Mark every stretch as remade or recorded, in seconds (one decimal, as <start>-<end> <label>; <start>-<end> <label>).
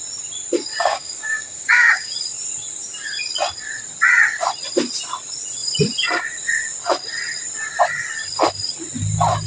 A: 0.0-0.7 recorded; 0.7-2.1 remade; 2.1-9.5 recorded